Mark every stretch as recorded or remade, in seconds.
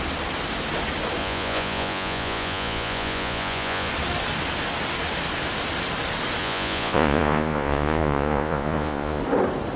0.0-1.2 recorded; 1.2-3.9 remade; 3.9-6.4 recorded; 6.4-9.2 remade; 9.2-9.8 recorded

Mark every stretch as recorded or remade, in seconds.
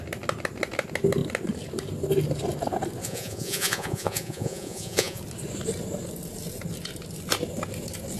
0.0-3.0 recorded; 3.0-5.2 remade; 5.2-8.2 recorded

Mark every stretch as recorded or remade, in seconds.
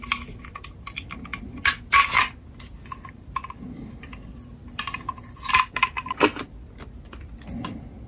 0.0-8.1 recorded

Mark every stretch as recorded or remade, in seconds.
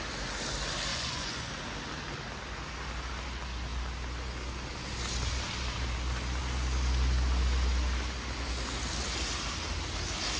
0.0-0.9 recorded; 0.9-1.5 remade; 1.5-10.4 recorded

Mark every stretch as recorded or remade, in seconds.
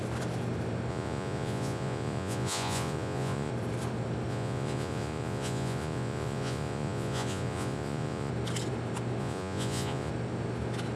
0.0-0.9 recorded; 0.9-3.5 remade; 3.5-4.3 recorded; 4.3-8.3 remade; 8.3-9.2 recorded; 9.2-10.1 remade; 10.1-11.0 recorded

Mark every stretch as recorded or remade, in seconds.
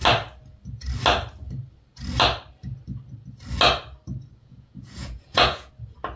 0.0-4.4 recorded; 4.4-5.7 remade; 5.7-6.2 recorded